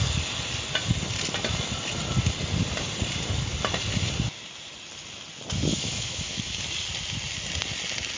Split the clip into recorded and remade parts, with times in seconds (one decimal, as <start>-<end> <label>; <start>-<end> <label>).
0.0-5.7 recorded; 5.7-6.6 remade; 6.6-8.2 recorded